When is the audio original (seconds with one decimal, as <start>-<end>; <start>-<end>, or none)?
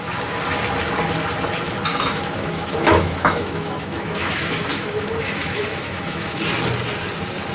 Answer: 0.0-1.9; 6.4-7.5